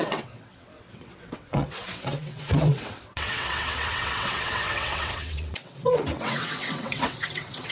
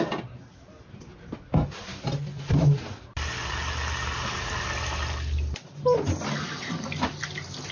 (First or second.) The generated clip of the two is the first